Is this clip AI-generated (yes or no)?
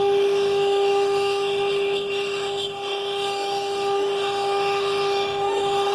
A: yes